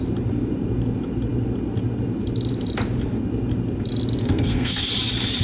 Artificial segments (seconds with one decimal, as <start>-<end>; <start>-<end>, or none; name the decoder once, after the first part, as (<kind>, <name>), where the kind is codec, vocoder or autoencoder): 4.2-4.8 (codec, SNAC)